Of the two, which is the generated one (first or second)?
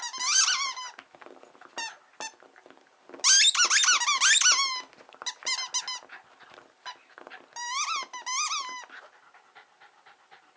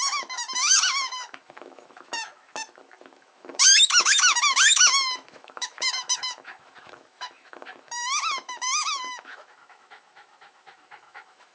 second